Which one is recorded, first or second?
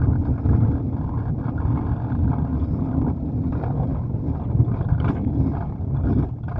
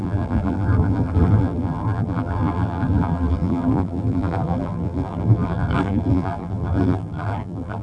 first